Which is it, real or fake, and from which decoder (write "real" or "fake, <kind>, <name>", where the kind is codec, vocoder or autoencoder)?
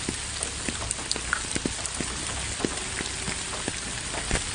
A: real